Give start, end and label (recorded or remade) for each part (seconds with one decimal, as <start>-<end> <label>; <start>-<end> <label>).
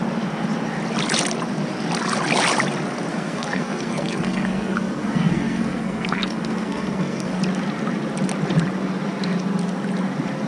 0.0-3.1 recorded; 3.1-7.4 remade; 7.4-10.5 recorded